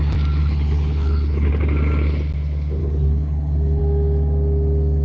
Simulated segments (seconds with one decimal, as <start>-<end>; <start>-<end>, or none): 0.4-1.5; 2.8-3.8